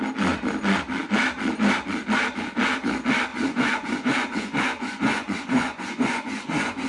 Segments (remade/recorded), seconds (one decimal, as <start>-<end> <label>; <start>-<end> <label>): 0.0-3.3 recorded; 3.3-6.9 remade

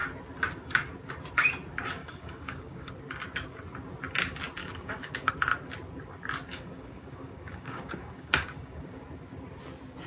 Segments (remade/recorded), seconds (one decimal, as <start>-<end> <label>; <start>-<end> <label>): 0.0-2.0 recorded; 2.0-2.9 remade; 2.9-4.6 recorded; 4.6-5.3 remade; 5.3-6.5 recorded; 6.5-9.0 remade; 9.0-10.1 recorded

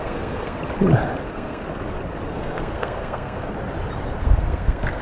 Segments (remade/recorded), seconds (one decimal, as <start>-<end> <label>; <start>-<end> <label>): 0.0-0.6 remade; 0.6-1.2 recorded; 1.2-1.6 remade; 1.6-2.3 recorded; 2.3-3.5 remade; 3.5-4.2 recorded; 4.2-5.0 remade

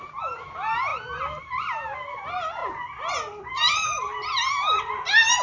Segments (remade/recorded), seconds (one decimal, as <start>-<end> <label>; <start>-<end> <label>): 0.0-5.4 recorded